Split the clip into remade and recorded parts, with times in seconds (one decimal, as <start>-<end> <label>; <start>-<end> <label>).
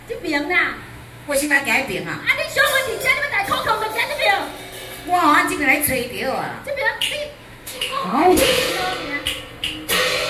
0.0-0.8 recorded; 0.8-1.6 remade; 1.6-7.4 recorded; 7.4-8.7 remade; 8.7-10.3 recorded